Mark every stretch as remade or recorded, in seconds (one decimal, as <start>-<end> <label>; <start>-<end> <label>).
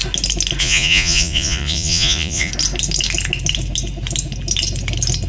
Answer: 0.0-0.6 recorded; 0.6-2.5 remade; 2.5-5.3 recorded